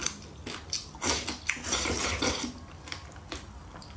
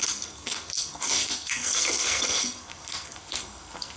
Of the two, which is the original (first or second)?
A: first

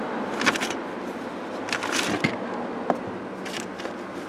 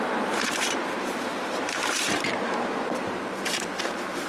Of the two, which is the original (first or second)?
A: first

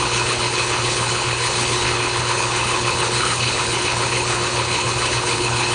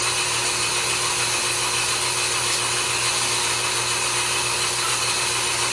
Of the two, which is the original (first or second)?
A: second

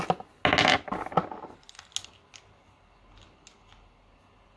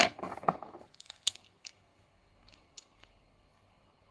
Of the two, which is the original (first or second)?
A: first